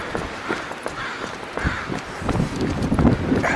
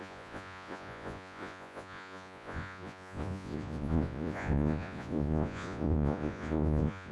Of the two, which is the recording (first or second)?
first